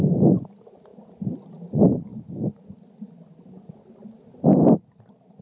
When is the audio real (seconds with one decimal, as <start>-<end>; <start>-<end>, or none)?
0.0-5.4